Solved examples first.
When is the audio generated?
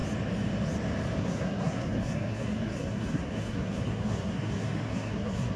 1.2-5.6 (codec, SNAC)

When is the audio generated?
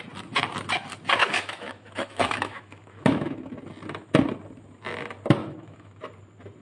1.2-3.5 (autoencoder, DAC-VAE); 5.4-6.0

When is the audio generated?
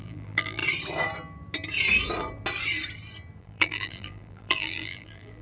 0.0-0.6 (vocoder, BigVGAN v2); 3.4-5.4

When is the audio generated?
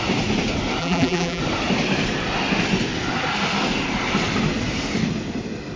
0.8-1.4 (vocoder, BigVGAN v2)